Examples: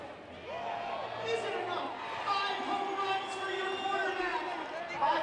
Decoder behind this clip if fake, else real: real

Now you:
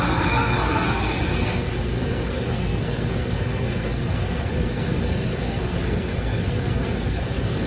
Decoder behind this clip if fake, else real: fake, codec, SNAC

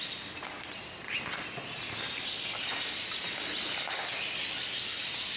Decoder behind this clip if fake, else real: real